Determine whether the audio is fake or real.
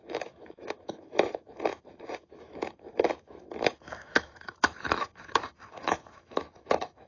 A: fake